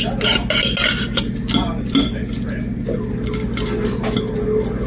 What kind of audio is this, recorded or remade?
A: recorded